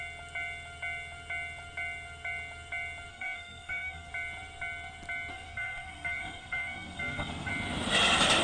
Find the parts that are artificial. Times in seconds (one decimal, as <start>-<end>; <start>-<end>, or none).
3.1-4.1; 5.3-7.5